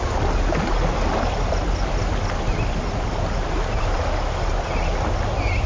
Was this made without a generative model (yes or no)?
yes